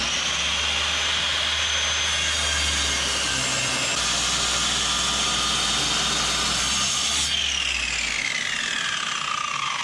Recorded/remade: recorded